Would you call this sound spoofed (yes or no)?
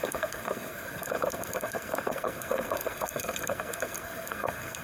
yes